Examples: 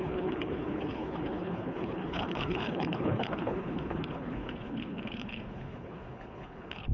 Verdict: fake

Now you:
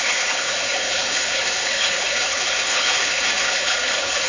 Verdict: fake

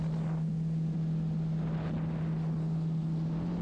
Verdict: real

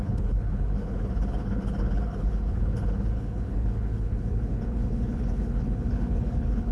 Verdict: fake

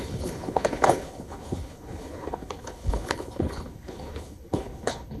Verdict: fake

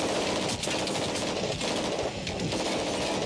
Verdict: real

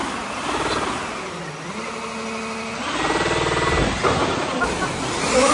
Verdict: real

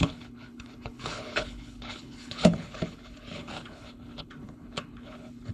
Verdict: fake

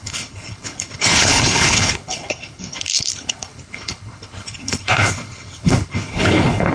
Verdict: fake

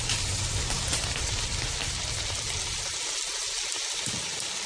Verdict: real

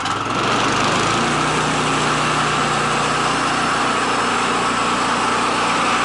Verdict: real